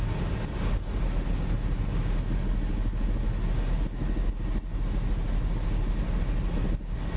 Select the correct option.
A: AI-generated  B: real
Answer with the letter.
B